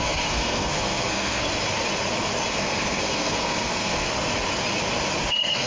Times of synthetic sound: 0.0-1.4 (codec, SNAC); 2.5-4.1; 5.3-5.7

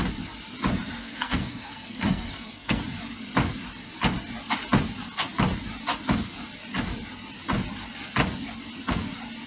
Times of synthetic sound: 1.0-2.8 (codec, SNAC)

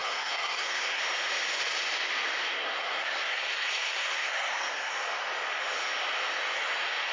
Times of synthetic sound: 0.0-1.0 (codec, SNAC); 2.5-4.9

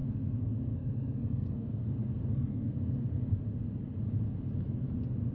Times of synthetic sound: 0.0-2.8 (codec, SNAC)